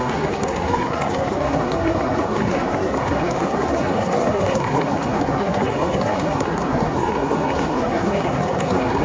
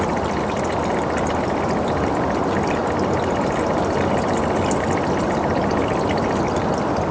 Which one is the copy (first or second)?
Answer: first